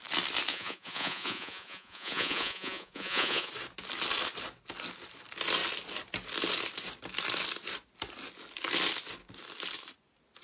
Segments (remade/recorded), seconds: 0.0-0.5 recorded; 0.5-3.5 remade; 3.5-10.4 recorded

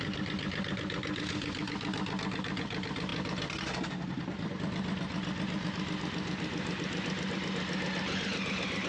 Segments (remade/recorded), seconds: 0.0-8.9 recorded

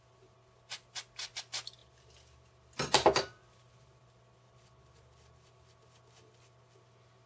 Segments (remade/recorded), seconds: 0.0-7.3 recorded

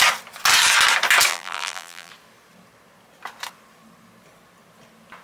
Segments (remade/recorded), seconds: 0.0-1.3 recorded; 1.3-2.1 remade; 2.1-5.2 recorded

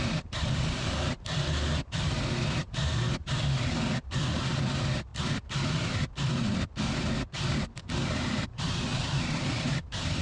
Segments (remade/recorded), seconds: 0.0-10.2 recorded

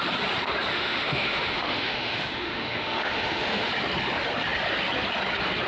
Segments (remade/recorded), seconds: 0.0-0.7 recorded; 0.7-3.7 remade; 3.7-5.7 recorded